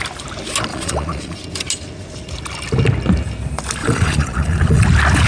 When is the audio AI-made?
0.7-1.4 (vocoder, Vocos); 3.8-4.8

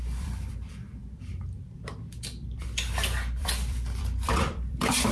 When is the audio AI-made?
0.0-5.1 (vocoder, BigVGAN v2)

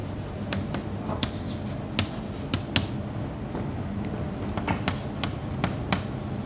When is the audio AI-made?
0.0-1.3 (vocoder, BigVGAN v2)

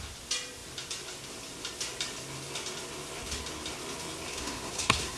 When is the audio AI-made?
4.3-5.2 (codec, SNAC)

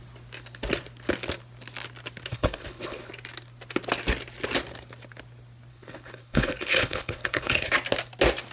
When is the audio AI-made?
2.3-3.1 (codec, HILCodec); 5.7-7.7